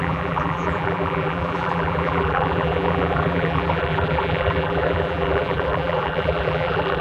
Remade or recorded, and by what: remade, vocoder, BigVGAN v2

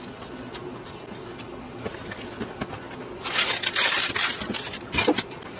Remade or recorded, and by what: recorded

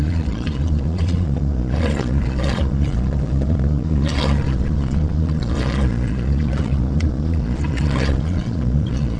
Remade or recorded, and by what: remade, vocoder, Vocos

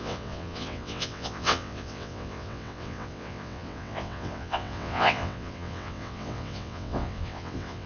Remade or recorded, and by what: remade, vocoder, WaveNeXt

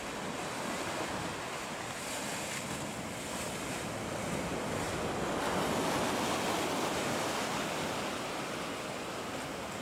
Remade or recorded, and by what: recorded